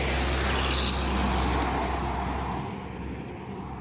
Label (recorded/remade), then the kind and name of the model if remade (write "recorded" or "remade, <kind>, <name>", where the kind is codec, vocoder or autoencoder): recorded